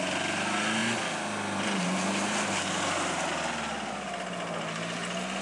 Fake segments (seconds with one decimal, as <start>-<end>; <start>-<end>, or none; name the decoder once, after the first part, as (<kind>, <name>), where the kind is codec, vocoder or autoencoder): none